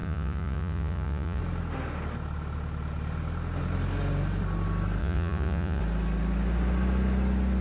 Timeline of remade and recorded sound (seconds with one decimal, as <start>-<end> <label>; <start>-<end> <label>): 0.0-1.4 remade; 1.4-5.0 recorded; 5.0-5.8 remade; 5.8-7.6 recorded